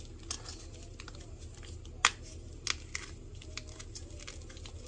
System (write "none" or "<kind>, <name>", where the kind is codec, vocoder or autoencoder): none